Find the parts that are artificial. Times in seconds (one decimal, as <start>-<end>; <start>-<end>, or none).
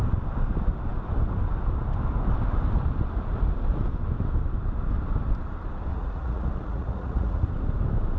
5.9-7.5